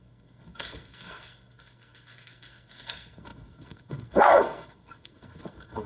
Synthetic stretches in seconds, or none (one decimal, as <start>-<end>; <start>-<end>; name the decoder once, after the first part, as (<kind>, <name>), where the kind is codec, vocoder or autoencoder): 0.0-5.9 (codec, SNAC)